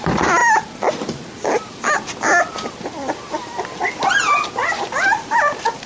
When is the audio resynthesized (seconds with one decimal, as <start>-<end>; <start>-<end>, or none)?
none